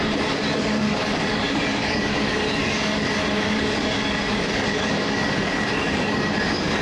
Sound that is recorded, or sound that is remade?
remade